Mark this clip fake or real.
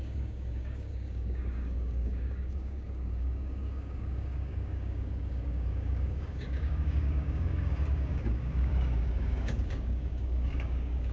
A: fake